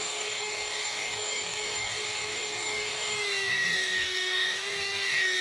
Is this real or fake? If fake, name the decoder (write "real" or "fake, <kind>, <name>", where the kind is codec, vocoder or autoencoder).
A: fake, codec, DAC